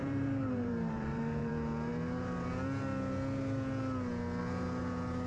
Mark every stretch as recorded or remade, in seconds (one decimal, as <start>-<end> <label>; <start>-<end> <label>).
0.0-1.5 remade; 1.5-5.3 recorded